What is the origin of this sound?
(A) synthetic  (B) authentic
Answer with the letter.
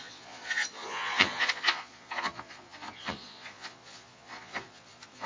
A